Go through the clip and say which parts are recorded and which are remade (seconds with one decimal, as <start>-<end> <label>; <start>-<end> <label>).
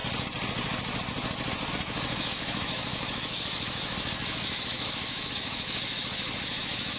0.0-1.7 recorded; 1.7-7.0 remade